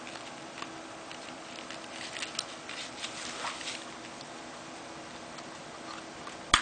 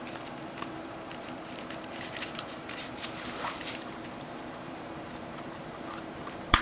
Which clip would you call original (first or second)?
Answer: first